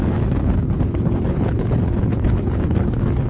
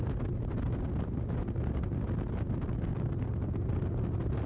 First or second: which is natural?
second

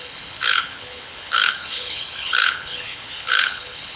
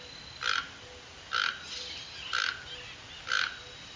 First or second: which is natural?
second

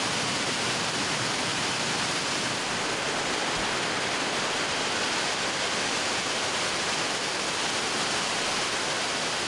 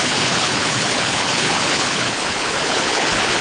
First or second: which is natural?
first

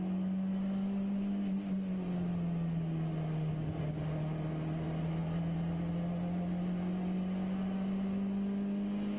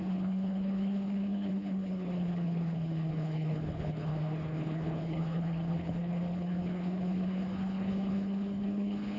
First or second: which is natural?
first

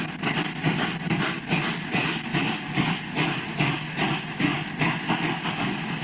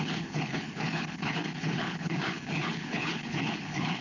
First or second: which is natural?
first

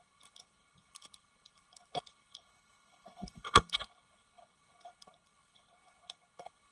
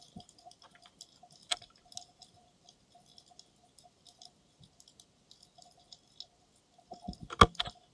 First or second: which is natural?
second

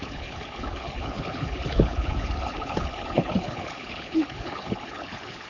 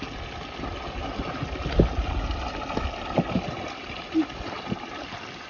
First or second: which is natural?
second